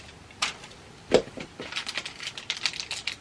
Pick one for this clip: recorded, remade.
recorded